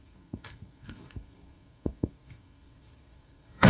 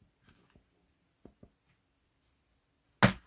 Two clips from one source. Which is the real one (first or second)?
second